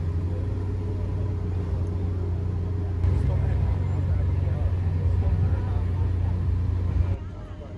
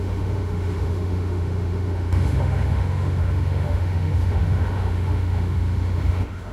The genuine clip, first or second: first